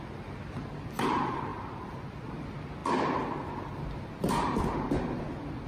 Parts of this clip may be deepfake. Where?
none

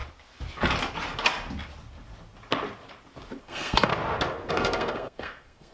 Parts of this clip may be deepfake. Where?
3.4-3.9 (codec, SNAC); 4.5-5.7